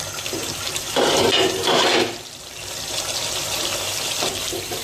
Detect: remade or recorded remade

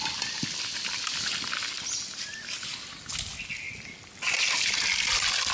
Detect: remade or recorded recorded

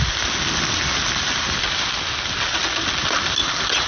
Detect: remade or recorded recorded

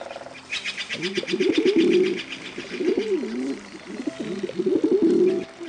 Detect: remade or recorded recorded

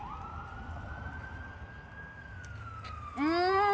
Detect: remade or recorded recorded